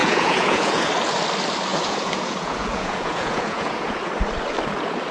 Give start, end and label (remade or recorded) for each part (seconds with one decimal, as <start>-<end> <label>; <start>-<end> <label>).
0.0-0.9 remade; 0.9-1.7 recorded; 1.7-4.1 remade; 4.1-5.1 recorded